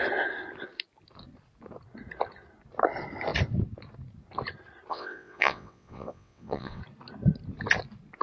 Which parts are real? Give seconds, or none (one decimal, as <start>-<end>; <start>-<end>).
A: 0.0-4.9; 6.8-8.2